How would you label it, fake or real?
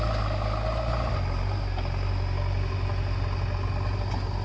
real